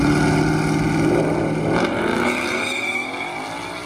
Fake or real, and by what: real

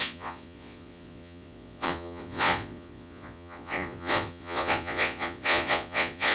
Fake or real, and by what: fake, vocoder, Vocos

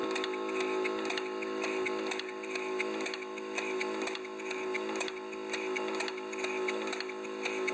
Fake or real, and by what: real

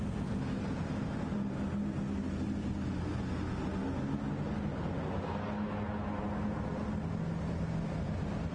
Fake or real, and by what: real